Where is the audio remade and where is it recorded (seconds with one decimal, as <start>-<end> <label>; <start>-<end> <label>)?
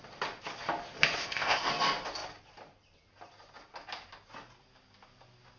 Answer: 0.0-1.2 recorded; 1.2-1.7 remade; 1.7-5.6 recorded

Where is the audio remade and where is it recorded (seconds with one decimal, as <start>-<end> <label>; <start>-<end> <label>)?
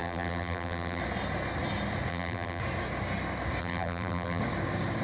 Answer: 0.0-1.0 remade; 1.0-2.1 recorded; 2.1-2.6 remade; 2.6-3.6 recorded; 3.6-4.4 remade; 4.4-5.0 recorded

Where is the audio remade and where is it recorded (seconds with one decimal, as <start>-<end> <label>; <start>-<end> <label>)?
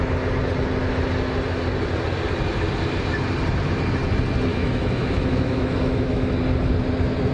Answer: 0.0-4.5 recorded; 4.5-6.3 remade; 6.3-7.3 recorded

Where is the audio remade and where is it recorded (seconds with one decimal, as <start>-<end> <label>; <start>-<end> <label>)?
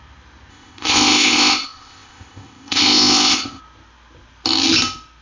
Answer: 0.0-0.5 recorded; 0.5-3.6 remade; 3.6-5.2 recorded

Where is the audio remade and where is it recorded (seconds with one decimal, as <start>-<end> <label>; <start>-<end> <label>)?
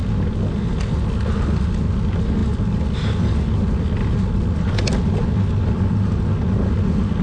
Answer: 0.0-7.2 recorded